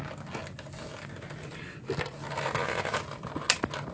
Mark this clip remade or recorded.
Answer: recorded